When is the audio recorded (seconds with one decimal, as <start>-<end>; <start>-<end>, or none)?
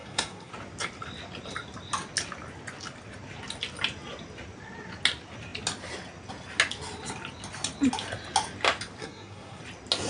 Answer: 0.5-9.0; 9.6-10.1